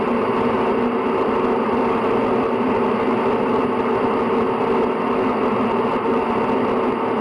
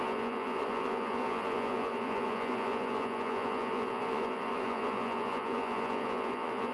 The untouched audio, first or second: first